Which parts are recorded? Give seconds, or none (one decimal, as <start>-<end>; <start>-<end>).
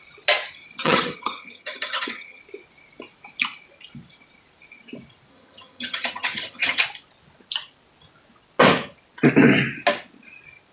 0.0-0.8; 2.4-5.3; 6.8-10.7